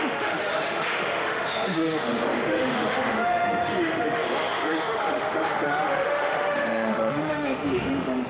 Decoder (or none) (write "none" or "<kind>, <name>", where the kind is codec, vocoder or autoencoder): autoencoder, DAC-VAE